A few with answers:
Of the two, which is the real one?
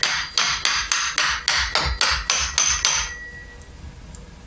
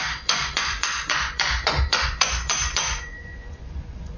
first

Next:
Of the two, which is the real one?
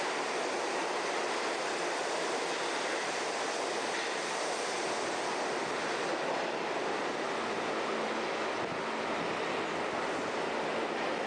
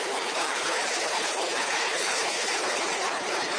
first